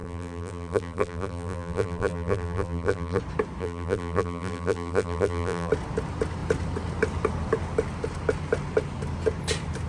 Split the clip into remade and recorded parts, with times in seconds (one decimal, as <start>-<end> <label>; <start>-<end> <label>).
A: 0.0-3.2 remade; 3.2-3.6 recorded; 3.6-5.7 remade; 5.7-9.9 recorded